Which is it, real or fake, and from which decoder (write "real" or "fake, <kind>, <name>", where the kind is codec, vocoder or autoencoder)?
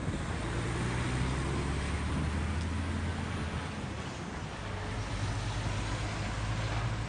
real